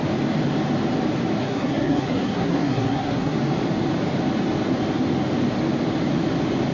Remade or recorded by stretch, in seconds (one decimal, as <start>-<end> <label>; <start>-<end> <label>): 0.0-1.4 recorded; 1.4-3.4 remade; 3.4-6.7 recorded